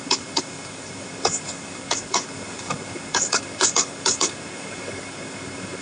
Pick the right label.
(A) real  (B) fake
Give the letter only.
B